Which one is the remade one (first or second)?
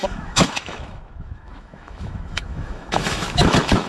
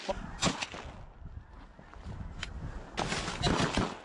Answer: first